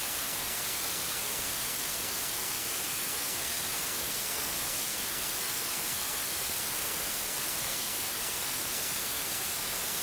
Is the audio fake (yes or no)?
yes